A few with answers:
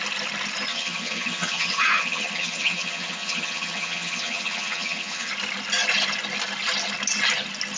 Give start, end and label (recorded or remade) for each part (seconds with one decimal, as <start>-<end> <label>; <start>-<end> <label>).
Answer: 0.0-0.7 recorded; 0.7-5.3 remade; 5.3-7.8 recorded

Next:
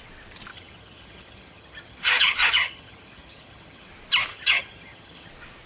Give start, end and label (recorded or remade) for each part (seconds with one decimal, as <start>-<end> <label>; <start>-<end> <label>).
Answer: 0.0-0.5 recorded; 0.5-3.9 remade; 3.9-4.3 recorded; 4.3-5.3 remade; 5.3-5.7 recorded

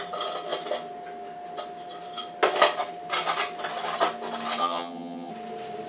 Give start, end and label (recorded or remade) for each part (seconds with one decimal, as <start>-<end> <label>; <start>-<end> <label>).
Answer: 0.0-4.6 recorded; 4.6-5.3 remade; 5.3-5.9 recorded

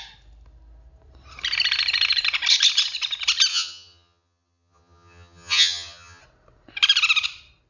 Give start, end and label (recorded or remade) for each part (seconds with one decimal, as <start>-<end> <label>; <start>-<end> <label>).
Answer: 0.0-3.5 recorded; 3.5-6.2 remade; 6.2-7.7 recorded